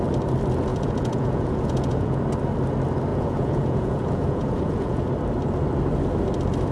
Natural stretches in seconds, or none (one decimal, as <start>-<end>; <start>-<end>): 0.0-0.7; 2.2-3.1; 5.1-6.7